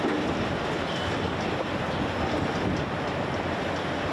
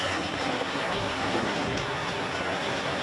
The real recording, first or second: first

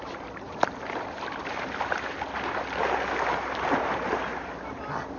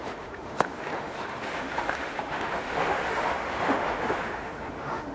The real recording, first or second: first